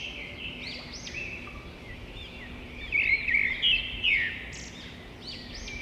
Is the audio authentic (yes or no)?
yes